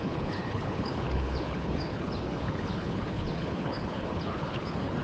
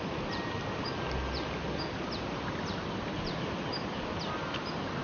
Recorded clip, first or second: second